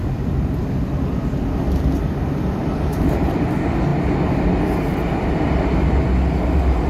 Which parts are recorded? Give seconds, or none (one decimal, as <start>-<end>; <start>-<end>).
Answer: 0.0-1.1; 3.5-6.9